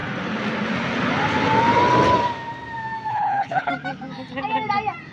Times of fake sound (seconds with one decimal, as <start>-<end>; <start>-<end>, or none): 3.1-3.7